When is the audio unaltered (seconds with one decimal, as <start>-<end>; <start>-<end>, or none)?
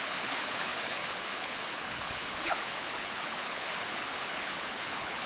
none